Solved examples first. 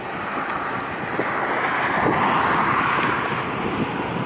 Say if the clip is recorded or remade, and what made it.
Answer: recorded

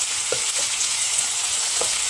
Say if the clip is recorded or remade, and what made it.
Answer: remade, vocoder, Vocos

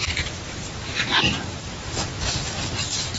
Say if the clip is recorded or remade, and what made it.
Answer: recorded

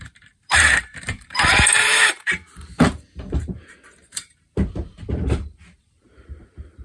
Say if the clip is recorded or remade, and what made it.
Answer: remade, vocoder, BigVGAN v2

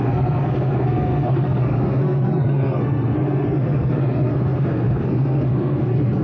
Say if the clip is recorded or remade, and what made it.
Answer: remade, codec, SNAC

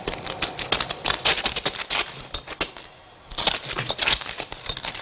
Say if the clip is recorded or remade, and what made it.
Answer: recorded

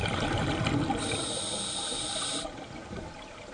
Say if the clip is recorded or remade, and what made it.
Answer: recorded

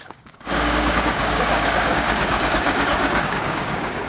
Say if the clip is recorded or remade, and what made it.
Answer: remade, codec, DAC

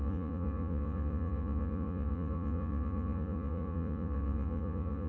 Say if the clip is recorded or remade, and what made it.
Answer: remade, vocoder, Vocos